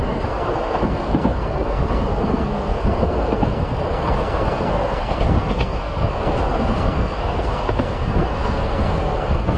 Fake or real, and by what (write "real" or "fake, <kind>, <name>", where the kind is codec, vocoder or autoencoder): fake, codec, SNAC